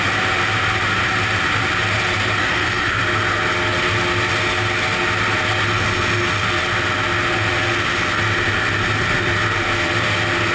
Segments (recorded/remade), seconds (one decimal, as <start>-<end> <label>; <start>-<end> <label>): 0.0-2.4 recorded; 2.4-3.0 remade; 3.0-10.5 recorded